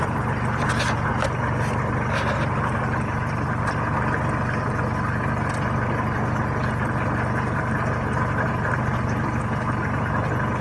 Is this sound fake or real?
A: real